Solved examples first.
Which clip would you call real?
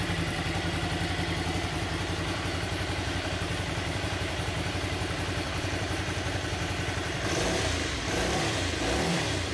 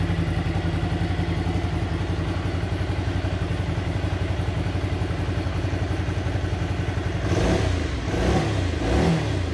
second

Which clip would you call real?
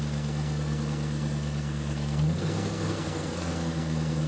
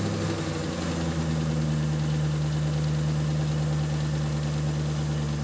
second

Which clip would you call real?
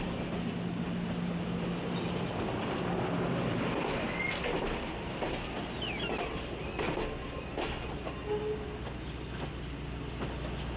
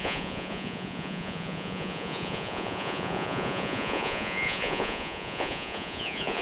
first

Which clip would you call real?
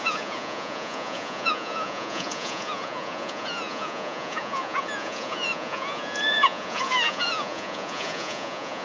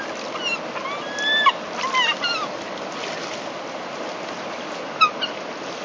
second